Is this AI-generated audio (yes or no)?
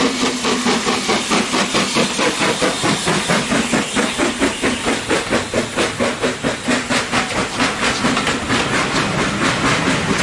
no